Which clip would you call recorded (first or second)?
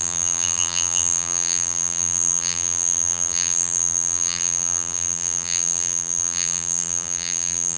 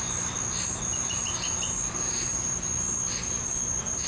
second